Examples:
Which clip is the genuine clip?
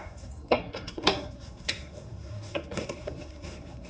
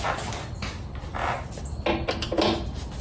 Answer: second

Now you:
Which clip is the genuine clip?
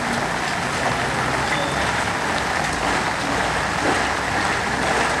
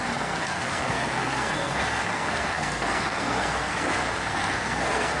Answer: first